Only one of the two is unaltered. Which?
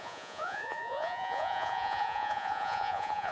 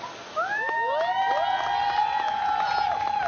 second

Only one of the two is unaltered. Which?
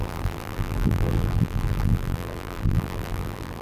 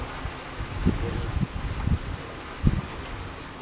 second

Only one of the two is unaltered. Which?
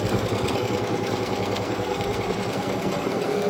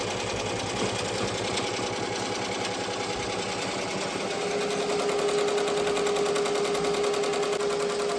second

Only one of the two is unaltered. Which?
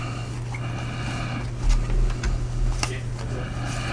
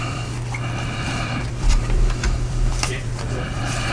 first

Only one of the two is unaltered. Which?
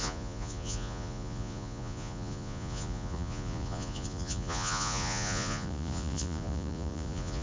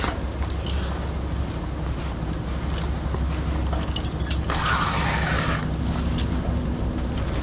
second